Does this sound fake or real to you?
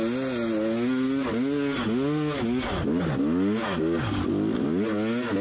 real